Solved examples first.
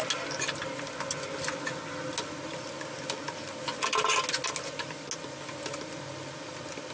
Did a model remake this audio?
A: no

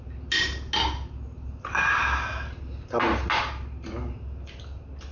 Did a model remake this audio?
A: no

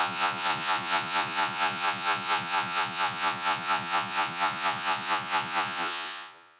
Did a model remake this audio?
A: yes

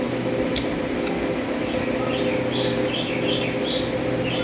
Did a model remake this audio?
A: no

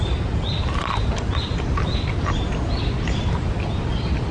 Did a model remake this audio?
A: no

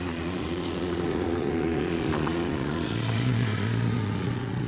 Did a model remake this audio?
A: yes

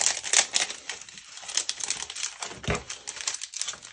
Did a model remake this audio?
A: no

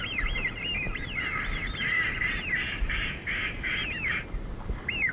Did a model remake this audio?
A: no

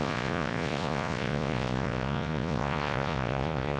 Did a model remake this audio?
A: yes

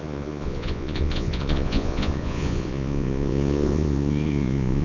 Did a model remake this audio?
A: yes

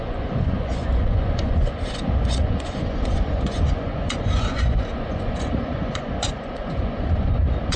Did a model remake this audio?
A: yes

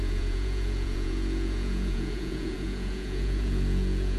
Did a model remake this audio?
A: yes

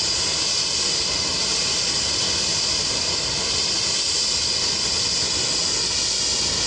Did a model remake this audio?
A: no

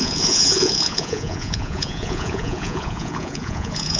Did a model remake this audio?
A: yes